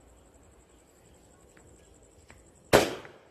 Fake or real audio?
real